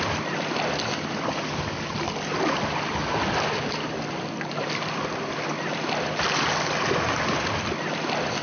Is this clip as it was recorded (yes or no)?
yes